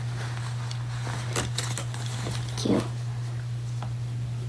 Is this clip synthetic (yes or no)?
no